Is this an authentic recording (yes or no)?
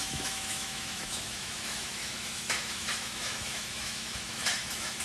no